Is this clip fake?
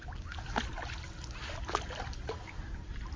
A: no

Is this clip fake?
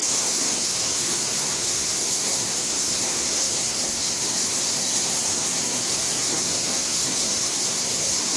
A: yes